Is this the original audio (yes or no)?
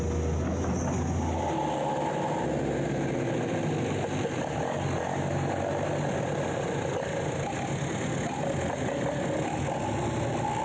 yes